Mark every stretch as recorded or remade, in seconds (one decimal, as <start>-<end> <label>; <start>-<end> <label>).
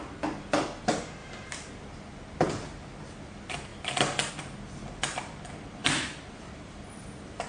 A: 0.0-1.2 recorded; 1.2-1.7 remade; 1.7-5.8 recorded; 5.8-6.5 remade; 6.5-7.5 recorded